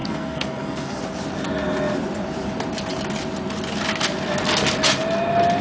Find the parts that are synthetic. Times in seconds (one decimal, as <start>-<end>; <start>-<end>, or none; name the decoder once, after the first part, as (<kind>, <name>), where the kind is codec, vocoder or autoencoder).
0.0-1.0 (codec, SNAC)